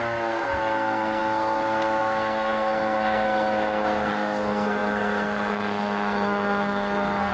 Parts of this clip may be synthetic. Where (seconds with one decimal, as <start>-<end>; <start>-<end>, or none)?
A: 0.0-7.3